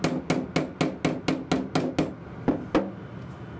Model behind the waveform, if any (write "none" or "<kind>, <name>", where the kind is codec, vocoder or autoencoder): none